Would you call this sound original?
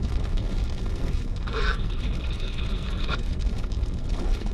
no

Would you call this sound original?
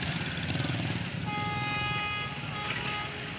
yes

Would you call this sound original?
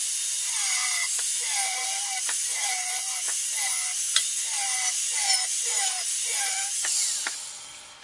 yes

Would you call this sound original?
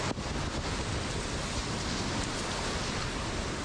yes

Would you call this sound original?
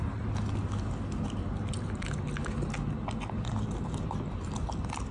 yes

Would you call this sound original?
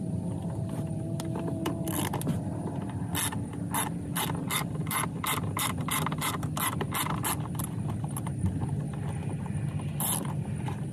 yes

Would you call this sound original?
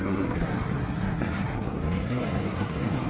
no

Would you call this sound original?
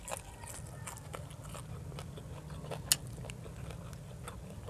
yes